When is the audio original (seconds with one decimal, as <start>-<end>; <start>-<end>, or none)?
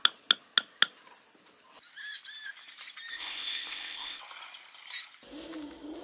0.0-3.1; 4.2-6.0